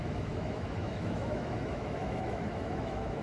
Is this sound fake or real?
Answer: fake